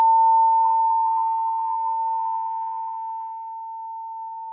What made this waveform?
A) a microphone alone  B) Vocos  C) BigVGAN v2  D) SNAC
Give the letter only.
D